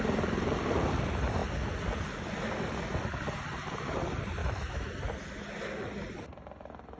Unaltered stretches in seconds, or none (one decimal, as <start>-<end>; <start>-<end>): 0.0-4.4; 4.9-7.0

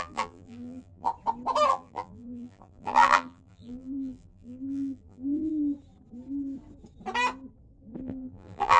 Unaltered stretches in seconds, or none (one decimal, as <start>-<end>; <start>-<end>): 1.1-1.7; 5.5-8.0

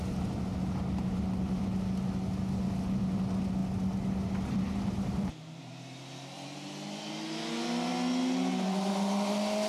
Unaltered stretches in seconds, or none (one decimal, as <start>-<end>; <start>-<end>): 0.0-9.7

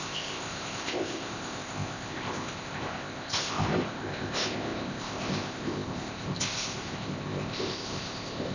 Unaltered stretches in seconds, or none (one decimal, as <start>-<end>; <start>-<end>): none

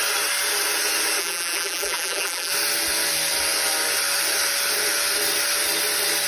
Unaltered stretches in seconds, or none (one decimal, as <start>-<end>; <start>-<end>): 0.0-1.2; 2.5-6.3

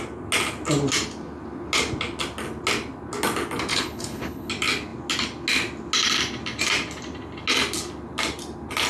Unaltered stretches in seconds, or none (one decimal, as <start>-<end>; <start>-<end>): 0.0-3.7; 4.5-8.9

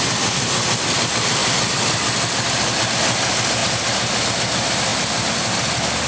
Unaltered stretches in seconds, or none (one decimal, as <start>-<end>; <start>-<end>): 0.0-6.1

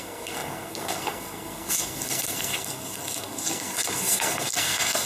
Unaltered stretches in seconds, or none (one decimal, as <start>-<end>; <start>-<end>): none